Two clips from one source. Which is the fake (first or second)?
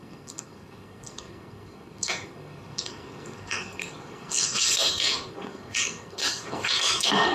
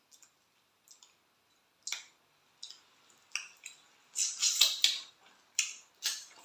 first